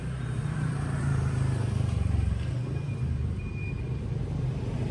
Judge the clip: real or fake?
fake